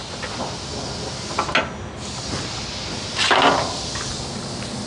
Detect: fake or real real